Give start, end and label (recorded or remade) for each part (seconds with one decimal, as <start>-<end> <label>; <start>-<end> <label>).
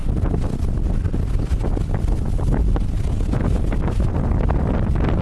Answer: 0.0-3.1 remade; 3.1-5.2 recorded